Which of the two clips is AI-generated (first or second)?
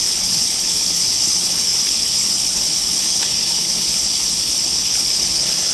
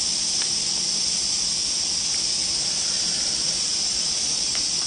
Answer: first